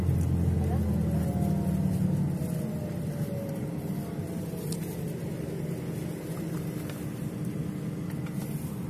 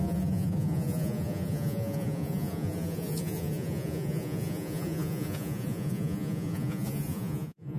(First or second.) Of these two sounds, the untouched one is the first